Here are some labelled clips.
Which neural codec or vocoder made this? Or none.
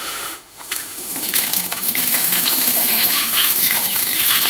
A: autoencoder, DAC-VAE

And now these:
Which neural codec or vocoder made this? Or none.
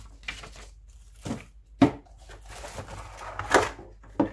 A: none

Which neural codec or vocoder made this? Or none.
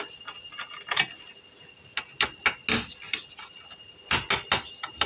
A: none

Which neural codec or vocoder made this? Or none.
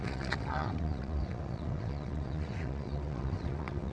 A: vocoder, WaveNeXt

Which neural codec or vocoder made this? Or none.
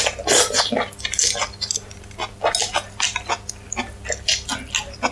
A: none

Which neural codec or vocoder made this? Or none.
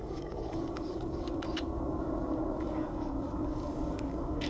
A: codec, DAC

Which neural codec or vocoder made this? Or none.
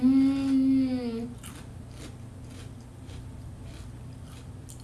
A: none